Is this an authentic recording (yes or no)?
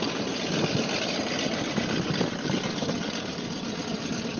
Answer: yes